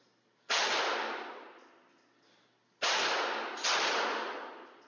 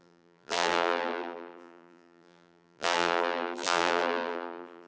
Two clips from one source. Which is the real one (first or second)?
first